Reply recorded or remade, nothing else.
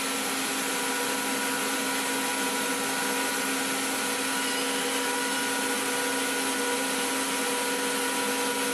recorded